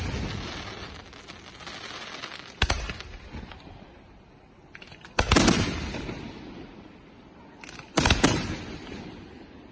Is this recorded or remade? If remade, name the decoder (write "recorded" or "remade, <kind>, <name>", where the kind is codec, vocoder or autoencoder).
recorded